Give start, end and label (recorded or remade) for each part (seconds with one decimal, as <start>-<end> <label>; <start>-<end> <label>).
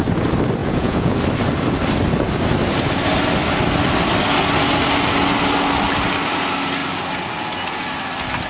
0.0-0.6 recorded; 0.6-1.2 remade; 1.2-8.5 recorded